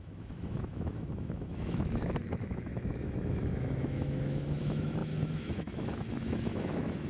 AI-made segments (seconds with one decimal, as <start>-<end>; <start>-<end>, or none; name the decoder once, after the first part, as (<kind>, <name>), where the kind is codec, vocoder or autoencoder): 0.0-7.1 (autoencoder, DAC-VAE)